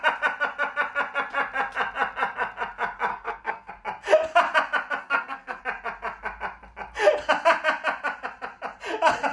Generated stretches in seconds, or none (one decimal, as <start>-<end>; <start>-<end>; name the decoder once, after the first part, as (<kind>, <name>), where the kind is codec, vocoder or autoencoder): 3.1-3.7 (codec, SNAC); 5.0-5.6